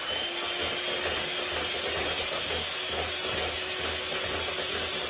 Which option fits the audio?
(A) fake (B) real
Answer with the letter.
B